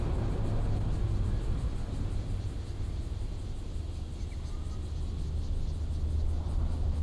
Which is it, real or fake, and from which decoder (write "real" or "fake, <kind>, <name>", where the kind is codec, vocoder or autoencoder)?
real